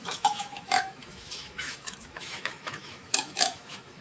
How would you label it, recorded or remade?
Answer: remade